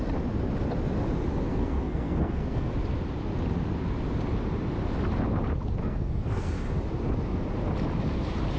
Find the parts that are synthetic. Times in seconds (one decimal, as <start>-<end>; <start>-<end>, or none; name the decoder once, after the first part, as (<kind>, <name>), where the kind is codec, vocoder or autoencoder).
1.5-2.7 (codec, SNAC); 5.8-6.6